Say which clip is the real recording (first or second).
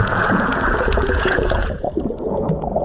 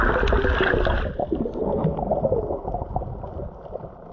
second